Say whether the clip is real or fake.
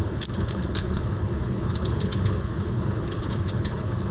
fake